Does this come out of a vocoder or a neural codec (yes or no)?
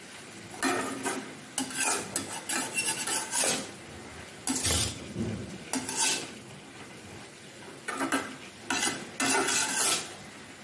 no